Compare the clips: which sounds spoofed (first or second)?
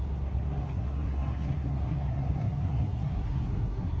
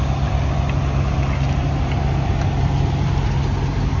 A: first